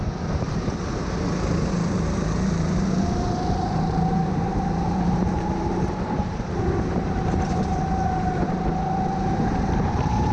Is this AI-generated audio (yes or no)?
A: yes